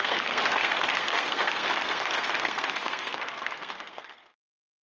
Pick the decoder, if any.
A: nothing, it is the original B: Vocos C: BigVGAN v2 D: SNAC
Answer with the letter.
D